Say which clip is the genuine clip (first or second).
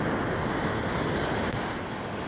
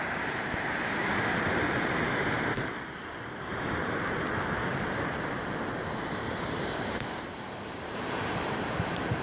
first